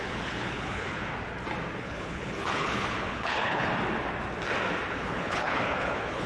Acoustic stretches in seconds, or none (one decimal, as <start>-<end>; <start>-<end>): 1.1-1.8; 3.7-4.9